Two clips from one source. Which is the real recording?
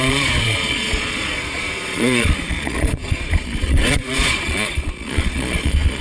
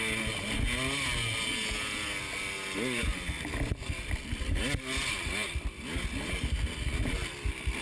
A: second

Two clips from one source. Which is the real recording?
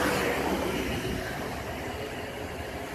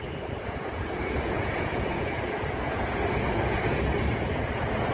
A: first